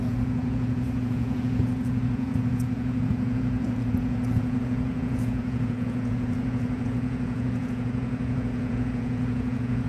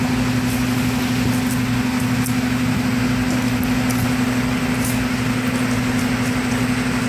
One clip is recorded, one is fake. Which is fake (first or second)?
first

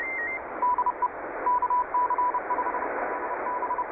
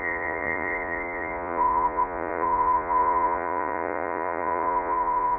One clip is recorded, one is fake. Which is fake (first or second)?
second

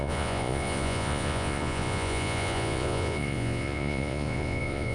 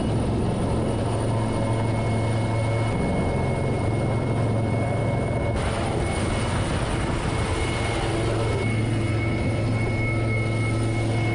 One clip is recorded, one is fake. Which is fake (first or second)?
first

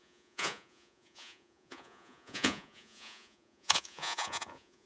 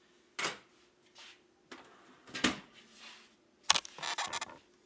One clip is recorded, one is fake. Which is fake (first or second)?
first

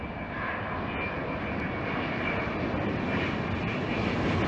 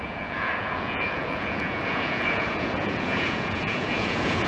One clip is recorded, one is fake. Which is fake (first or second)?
second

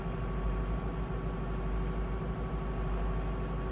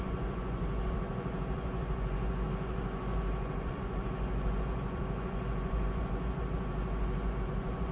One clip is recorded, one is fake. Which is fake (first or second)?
second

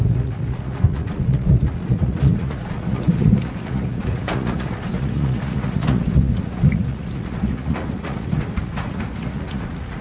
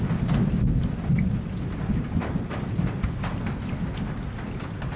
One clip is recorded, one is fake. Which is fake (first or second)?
first